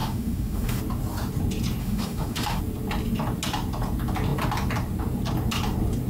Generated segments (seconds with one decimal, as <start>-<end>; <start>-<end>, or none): 0.0-0.8; 1.8-2.6